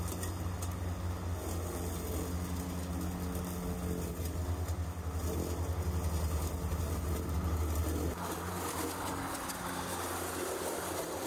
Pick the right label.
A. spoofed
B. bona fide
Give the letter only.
B